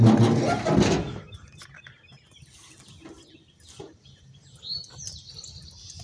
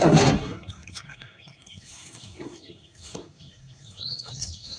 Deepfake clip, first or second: second